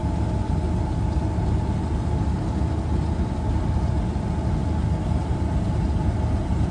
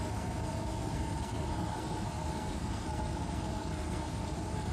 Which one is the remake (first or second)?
second